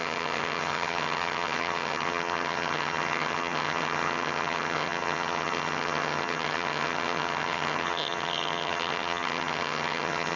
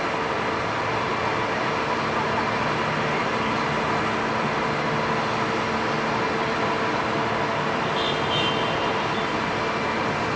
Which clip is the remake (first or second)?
first